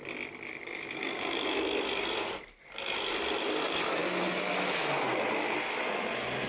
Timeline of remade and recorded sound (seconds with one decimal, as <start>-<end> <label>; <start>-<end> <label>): 0.0-6.5 recorded